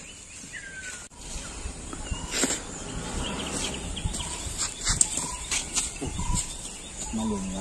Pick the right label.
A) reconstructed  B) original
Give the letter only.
B